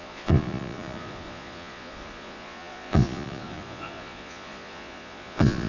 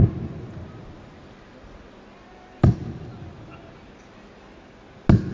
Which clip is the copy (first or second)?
first